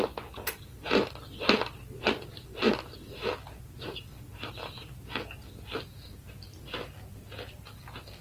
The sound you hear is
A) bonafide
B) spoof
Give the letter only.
A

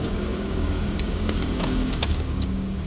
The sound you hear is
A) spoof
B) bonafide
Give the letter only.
A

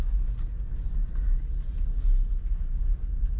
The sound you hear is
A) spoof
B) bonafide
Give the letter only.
B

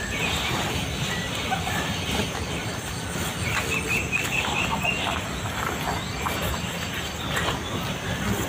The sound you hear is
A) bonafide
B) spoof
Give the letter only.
A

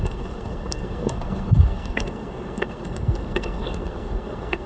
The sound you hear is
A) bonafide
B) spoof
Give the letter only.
B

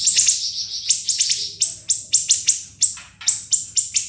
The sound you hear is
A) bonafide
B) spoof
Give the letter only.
A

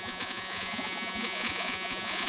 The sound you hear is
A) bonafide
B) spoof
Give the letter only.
B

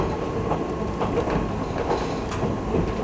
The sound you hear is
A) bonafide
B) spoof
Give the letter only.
A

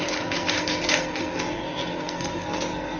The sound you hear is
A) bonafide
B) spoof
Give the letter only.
B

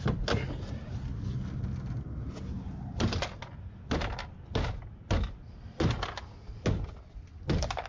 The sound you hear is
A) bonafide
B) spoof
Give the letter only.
A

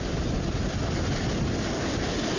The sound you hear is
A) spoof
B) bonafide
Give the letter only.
B